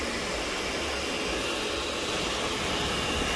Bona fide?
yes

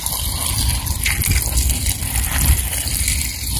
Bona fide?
yes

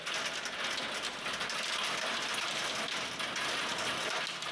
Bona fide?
yes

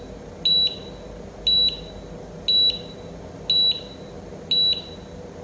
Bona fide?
yes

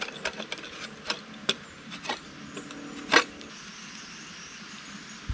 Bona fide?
yes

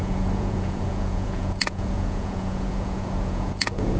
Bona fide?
no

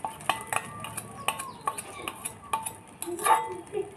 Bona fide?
yes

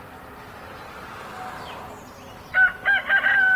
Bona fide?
yes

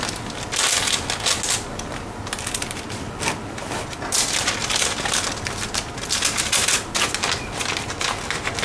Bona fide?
yes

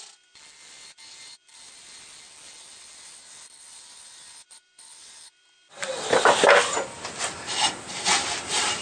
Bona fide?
yes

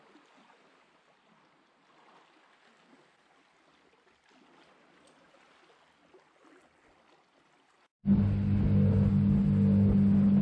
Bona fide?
yes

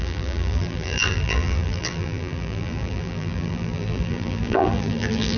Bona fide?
no